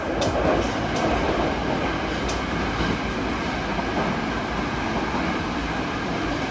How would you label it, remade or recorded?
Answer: recorded